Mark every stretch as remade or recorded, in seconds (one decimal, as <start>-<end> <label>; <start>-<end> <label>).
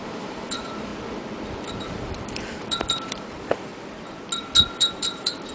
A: 0.0-0.9 remade; 0.9-1.7 recorded; 1.7-3.7 remade; 3.7-4.7 recorded; 4.7-5.5 remade